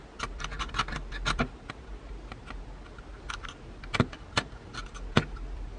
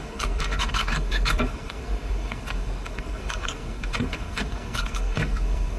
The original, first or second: first